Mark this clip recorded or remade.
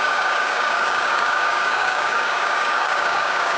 remade